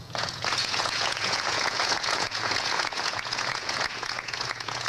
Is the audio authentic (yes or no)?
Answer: no